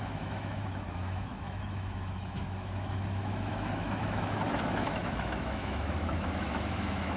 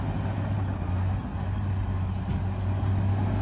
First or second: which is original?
second